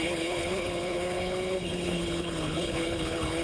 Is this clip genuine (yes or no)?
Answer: no